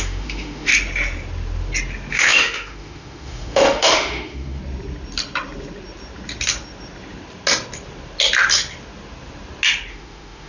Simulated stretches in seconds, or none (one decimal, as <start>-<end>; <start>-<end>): 0.0-0.7; 2.1-4.6; 9.9-10.5